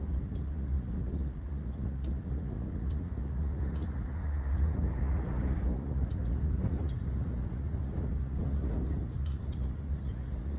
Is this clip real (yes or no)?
no